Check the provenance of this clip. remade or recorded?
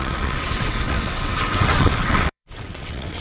remade